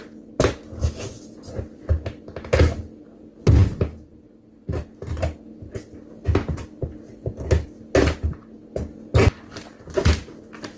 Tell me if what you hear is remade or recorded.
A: recorded